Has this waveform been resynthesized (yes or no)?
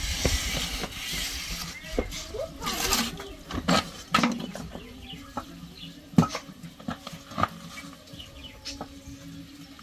no